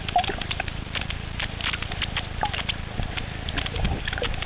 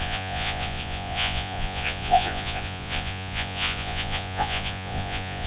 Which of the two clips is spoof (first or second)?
second